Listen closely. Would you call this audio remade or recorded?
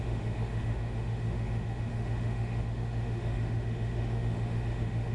remade